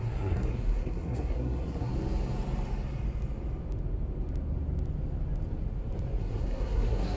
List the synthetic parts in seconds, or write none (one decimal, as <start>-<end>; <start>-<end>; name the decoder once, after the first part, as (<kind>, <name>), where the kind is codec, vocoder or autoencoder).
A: 0.0-1.9 (codec, SNAC); 6.2-7.2